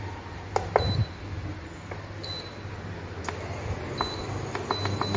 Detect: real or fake real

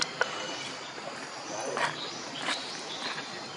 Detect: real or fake fake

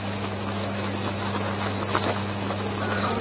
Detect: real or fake fake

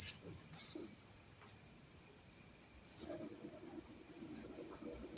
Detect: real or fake real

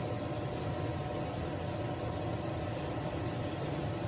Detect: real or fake real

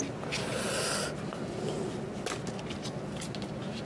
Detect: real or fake real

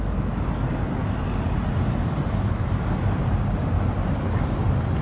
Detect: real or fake real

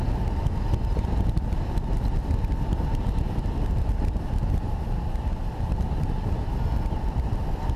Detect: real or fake real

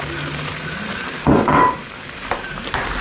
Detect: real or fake real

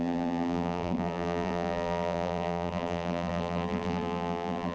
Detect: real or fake fake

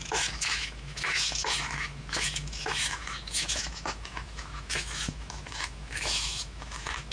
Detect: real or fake fake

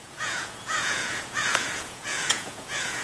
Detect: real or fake fake